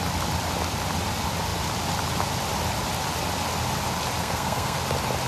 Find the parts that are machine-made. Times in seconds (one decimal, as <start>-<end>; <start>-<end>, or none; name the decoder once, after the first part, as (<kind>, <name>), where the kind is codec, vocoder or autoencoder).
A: 4.2-4.8 (codec, SNAC)